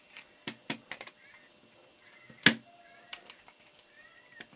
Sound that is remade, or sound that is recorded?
recorded